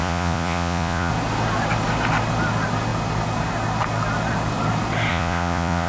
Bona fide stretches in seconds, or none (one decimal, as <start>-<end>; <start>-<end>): 1.1-5.1